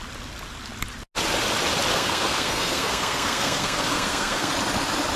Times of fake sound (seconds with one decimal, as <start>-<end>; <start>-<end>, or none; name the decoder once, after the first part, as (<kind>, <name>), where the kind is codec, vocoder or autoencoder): 1.9-4.5 (codec, SNAC)